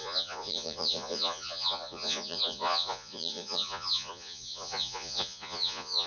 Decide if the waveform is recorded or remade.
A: remade